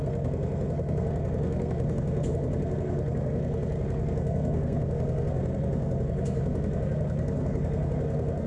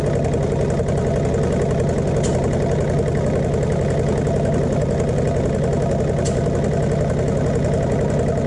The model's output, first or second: first